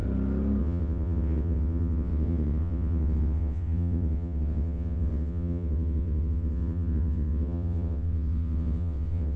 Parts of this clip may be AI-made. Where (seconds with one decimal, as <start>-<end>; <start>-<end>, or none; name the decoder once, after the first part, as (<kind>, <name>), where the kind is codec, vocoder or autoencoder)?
0.6-9.4 (vocoder, WaveNeXt)